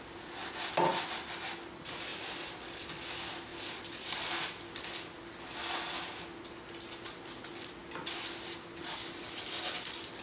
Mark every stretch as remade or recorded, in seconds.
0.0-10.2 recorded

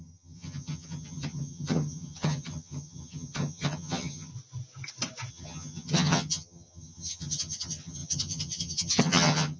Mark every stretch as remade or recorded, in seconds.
0.0-4.3 remade; 4.3-5.3 recorded; 5.3-9.6 remade

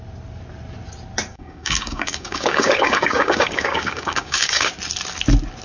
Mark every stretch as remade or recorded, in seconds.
0.0-1.3 recorded; 1.3-4.7 remade; 4.7-5.6 recorded

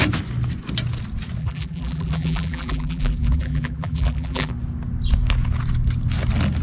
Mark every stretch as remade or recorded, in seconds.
0.0-1.4 recorded; 1.4-4.5 remade; 4.5-6.6 recorded

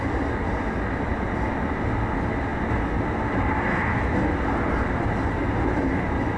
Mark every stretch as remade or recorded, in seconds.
0.0-6.4 recorded

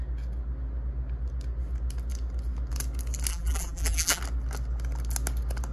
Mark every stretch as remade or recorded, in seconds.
0.0-3.3 recorded; 3.3-4.2 remade; 4.2-5.7 recorded

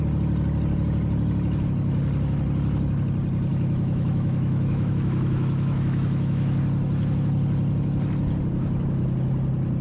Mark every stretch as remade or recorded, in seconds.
0.0-3.5 recorded; 3.5-6.6 remade; 6.6-9.8 recorded